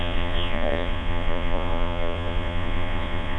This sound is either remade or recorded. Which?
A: remade